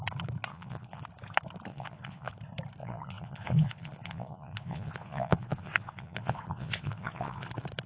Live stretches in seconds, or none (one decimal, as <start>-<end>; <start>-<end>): 0.0-0.5; 1.0-1.7; 2.3-2.8; 7.5-7.9